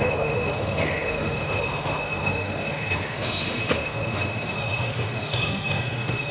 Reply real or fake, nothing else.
fake